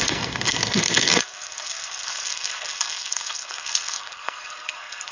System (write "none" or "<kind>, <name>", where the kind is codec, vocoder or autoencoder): codec, SNAC